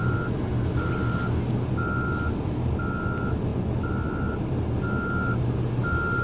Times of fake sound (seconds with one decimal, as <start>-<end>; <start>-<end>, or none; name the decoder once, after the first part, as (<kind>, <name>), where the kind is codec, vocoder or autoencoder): none